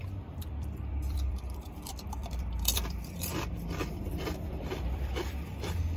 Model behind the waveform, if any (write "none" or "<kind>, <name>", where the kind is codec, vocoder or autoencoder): vocoder, BigVGAN v2